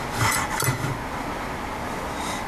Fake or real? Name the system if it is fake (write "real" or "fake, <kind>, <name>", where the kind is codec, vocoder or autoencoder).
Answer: real